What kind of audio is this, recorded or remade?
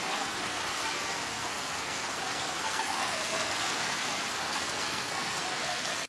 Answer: remade